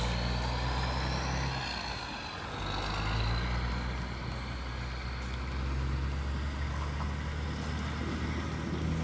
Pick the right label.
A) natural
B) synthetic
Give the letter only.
A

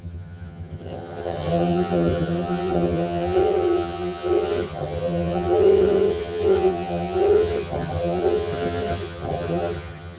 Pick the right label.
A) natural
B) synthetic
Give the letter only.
B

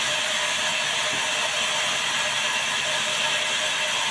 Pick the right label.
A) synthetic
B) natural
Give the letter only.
B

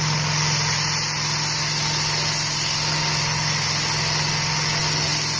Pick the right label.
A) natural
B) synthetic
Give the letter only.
A